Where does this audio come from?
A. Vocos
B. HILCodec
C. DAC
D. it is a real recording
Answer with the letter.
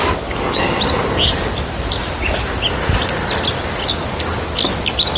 D